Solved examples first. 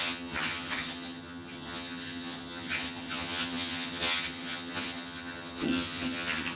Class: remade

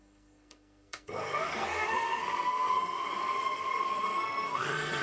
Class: remade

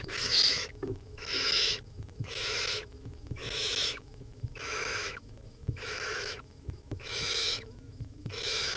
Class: remade